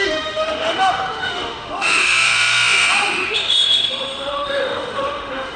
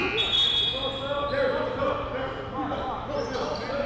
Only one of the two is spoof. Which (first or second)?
first